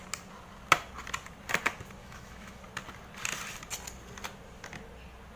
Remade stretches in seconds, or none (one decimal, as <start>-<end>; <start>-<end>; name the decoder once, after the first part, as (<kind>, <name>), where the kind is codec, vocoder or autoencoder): 2.0-2.6 (autoencoder, DAC-VAE)